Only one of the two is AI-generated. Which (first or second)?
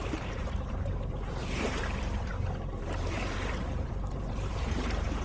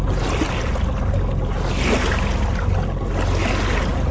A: first